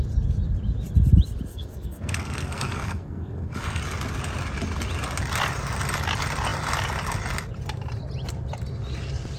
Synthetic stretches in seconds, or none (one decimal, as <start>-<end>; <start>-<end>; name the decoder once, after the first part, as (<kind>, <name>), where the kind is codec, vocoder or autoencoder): 1.5-3.8 (codec, SNAC)